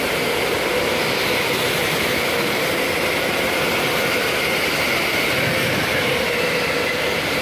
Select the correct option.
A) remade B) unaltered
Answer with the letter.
B